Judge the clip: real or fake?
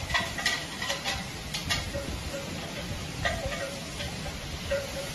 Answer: fake